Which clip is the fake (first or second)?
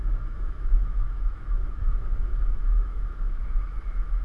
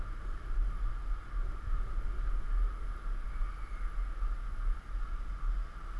first